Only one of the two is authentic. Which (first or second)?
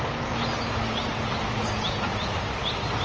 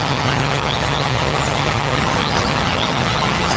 first